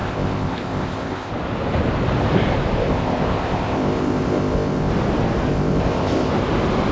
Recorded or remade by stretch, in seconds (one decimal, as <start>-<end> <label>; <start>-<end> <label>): 0.0-1.3 remade; 1.3-2.8 recorded; 2.8-4.9 remade; 4.9-5.5 recorded; 5.5-6.3 remade; 6.3-6.9 recorded